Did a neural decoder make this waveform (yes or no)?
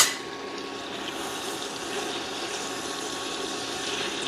no